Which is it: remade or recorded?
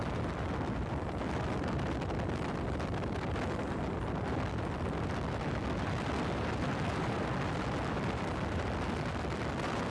recorded